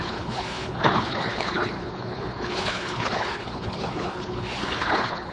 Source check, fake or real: fake